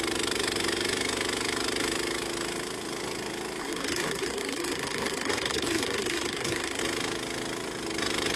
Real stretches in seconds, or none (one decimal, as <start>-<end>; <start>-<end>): 0.0-3.6; 6.8-8.4